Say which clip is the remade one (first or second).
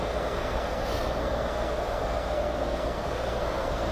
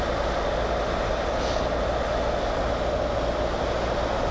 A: first